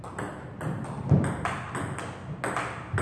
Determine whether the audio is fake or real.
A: real